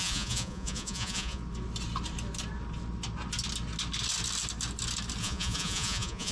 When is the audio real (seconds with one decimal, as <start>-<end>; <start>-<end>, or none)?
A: 1.4-5.2